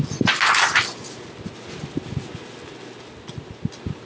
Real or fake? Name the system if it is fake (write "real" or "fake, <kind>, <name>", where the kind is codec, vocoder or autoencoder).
real